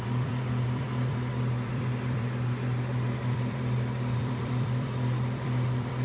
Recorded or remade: remade